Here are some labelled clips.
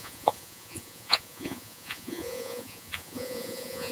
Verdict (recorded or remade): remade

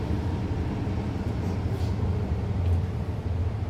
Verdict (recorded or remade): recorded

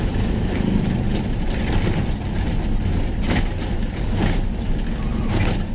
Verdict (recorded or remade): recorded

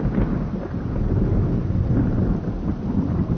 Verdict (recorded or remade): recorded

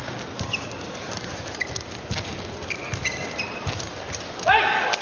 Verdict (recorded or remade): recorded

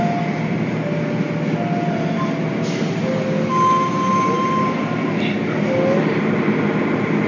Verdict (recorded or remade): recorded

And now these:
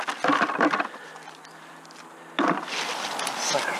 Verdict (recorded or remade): recorded